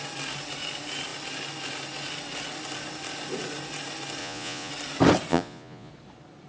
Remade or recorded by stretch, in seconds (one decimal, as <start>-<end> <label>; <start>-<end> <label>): 0.0-4.2 recorded; 4.2-4.7 remade; 4.7-5.3 recorded; 5.3-5.9 remade; 5.9-6.5 recorded